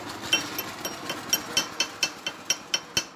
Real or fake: real